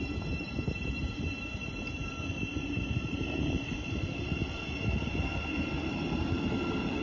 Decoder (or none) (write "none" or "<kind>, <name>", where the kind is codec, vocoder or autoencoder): vocoder, BigVGAN v2